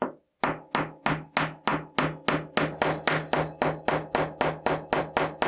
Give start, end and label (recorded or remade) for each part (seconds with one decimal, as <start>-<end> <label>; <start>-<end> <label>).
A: 0.0-5.5 recorded